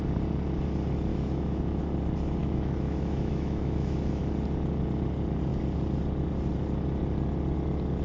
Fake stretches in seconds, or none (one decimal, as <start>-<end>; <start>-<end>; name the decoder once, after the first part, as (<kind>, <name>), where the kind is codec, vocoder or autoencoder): 1.1-1.8 (autoencoder, DAC-VAE); 2.4-4.2